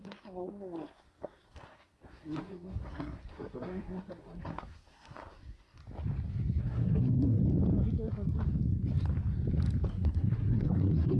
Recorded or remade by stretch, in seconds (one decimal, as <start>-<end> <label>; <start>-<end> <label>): 0.0-5.8 remade; 5.8-6.6 recorded; 6.6-7.4 remade; 7.4-9.9 recorded; 9.9-11.2 remade